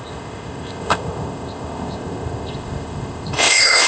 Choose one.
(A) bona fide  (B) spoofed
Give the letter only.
B